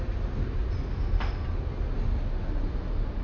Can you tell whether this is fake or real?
real